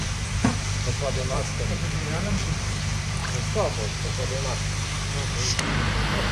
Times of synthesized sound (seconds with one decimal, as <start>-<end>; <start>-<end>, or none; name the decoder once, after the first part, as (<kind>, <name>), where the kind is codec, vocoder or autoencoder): 0.0-3.2 (vocoder, BigVGAN v2)